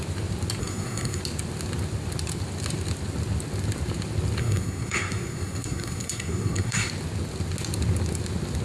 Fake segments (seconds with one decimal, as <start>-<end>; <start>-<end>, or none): 0.6-1.2; 4.4-6.9